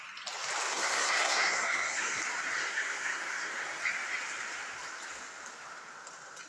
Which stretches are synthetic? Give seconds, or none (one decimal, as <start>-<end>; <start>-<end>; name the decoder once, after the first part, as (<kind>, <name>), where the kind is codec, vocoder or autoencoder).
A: 0.7-2.2 (codec, SNAC); 2.6-3.8